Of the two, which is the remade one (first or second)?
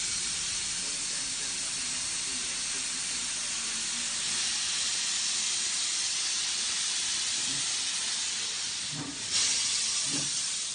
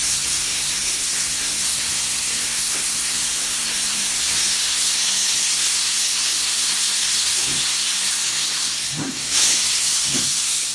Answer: second